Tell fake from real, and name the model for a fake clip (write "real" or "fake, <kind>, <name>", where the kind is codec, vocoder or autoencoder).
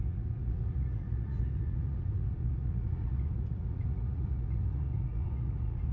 fake, vocoder, Vocos